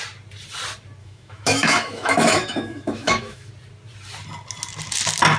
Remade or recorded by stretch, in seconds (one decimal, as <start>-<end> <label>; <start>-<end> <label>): 0.0-1.0 recorded; 1.0-3.5 remade; 3.5-5.4 recorded

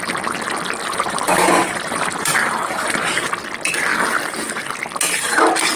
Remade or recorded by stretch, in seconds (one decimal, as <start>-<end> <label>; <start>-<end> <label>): 0.0-0.9 recorded; 0.9-3.3 remade; 3.3-5.8 recorded

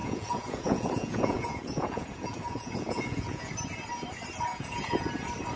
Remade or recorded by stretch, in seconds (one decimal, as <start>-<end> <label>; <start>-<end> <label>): 0.0-3.4 remade; 3.4-4.5 recorded; 4.5-5.1 remade; 5.1-5.6 recorded

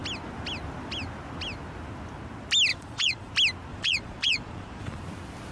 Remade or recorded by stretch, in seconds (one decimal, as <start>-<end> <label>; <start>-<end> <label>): 0.0-2.7 recorded; 2.7-3.3 remade; 3.3-3.7 recorded; 3.7-5.0 remade; 5.0-5.5 recorded

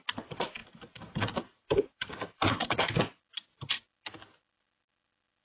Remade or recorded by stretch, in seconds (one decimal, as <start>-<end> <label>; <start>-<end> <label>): 0.0-0.6 recorded; 0.6-3.0 remade; 3.0-5.4 recorded

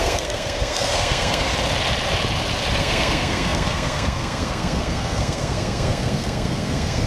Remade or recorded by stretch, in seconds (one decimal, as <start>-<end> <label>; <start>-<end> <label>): 0.0-1.5 remade; 1.5-2.8 recorded; 2.8-7.1 remade

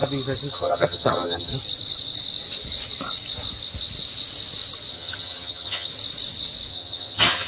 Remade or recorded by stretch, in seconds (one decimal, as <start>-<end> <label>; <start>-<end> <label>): 0.0-0.5 recorded; 0.5-1.5 remade; 1.5-4.9 recorded; 4.9-5.9 remade; 5.9-6.7 recorded; 6.7-7.5 remade